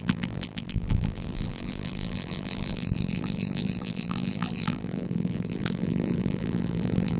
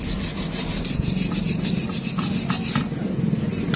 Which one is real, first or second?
second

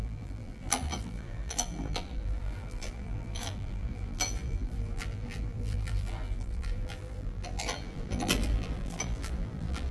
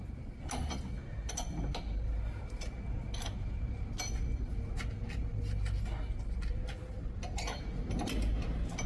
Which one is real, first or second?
second